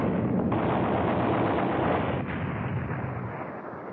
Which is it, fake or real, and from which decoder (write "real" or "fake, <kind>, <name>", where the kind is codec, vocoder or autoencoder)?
real